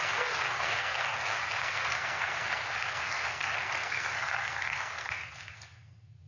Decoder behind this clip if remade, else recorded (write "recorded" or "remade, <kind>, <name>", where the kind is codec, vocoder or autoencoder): remade, codec, SNAC